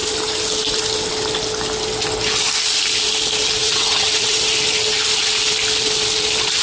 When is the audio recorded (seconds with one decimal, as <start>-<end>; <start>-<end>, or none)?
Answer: 0.0-3.6; 4.4-6.6